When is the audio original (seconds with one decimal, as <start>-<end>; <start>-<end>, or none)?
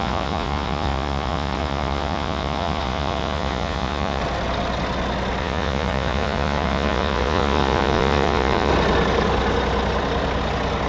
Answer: 4.2-5.4; 8.7-10.9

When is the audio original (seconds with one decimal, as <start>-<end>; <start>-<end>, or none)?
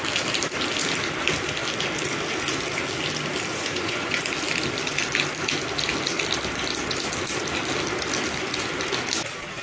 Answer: 0.0-3.5; 4.2-9.6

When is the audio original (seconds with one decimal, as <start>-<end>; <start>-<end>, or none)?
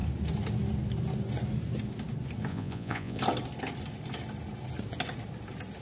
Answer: 0.0-2.5; 3.2-5.8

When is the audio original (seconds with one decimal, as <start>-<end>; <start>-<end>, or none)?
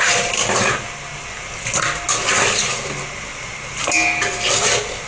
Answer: 0.0-5.1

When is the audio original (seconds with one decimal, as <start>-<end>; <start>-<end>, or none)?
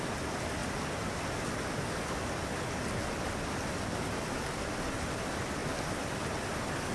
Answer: 0.0-6.9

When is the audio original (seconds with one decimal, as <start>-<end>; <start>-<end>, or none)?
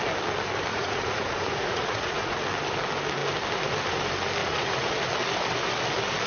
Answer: 0.0-0.7; 2.4-4.4; 4.9-6.3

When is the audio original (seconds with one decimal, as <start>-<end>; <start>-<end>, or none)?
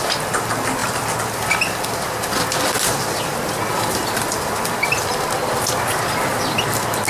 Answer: 0.0-7.1